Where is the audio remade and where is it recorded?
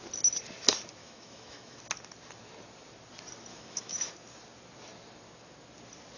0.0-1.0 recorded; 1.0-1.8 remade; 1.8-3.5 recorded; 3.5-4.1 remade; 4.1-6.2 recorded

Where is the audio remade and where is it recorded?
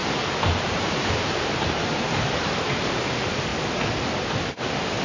0.0-3.5 remade; 3.5-5.0 recorded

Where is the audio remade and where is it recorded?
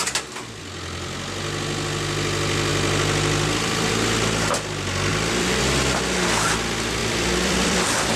0.0-5.1 recorded; 5.1-5.6 remade; 5.6-7.0 recorded; 7.0-8.2 remade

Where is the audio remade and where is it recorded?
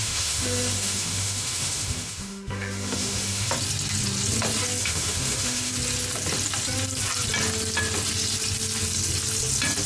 0.0-3.5 remade; 3.5-4.8 recorded; 4.8-5.7 remade; 5.7-9.9 recorded